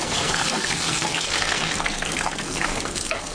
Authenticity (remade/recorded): remade